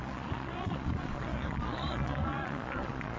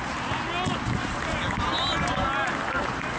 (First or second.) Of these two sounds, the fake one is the first